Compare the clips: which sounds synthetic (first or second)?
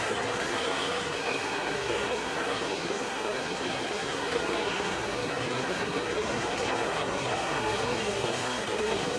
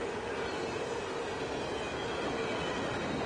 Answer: first